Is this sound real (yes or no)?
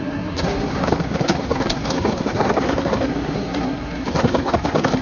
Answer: no